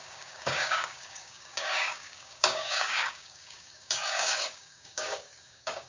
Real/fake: fake